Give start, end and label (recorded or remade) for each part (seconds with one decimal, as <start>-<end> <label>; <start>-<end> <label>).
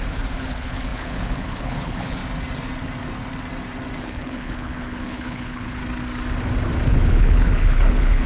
0.0-2.2 remade; 2.2-4.0 recorded; 4.0-5.8 remade; 5.8-6.9 recorded; 6.9-8.3 remade